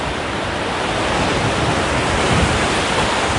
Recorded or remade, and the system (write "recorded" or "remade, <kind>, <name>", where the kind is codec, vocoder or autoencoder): recorded